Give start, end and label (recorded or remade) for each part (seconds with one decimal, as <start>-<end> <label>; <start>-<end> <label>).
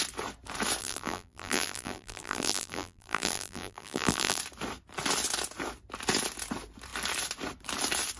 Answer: 0.0-0.8 recorded; 0.8-4.4 remade; 4.4-8.2 recorded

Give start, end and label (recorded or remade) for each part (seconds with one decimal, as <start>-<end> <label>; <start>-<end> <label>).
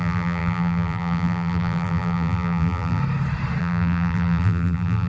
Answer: 0.0-3.0 remade; 3.0-3.6 recorded; 3.6-5.1 remade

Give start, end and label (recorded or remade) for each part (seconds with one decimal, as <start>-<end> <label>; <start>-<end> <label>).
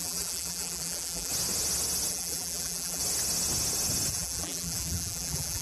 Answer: 0.0-1.3 remade; 1.3-2.1 recorded; 2.1-3.0 remade; 3.0-4.1 recorded; 4.1-5.6 remade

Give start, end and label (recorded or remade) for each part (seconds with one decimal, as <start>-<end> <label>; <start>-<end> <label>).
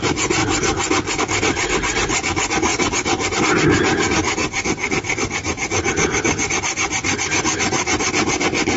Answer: 0.0-8.8 recorded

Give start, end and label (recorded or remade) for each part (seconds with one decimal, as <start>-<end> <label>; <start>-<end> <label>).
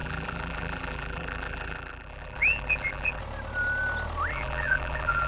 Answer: 0.0-3.2 remade; 3.2-4.3 recorded; 4.3-5.3 remade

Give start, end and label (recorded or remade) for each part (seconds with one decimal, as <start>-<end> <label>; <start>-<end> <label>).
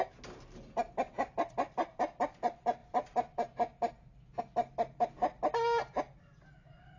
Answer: 0.0-7.0 recorded